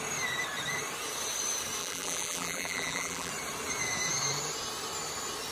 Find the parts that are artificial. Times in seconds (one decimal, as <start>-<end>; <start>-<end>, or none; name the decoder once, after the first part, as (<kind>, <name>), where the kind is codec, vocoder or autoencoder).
1.8-3.3 (vocoder, BigVGAN v2)